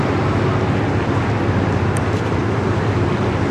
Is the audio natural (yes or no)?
yes